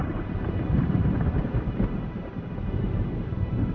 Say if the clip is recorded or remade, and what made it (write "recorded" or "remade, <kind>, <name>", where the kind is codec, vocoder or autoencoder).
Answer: remade, vocoder, BigVGAN v2